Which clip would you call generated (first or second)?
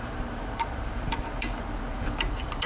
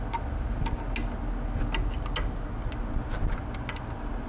first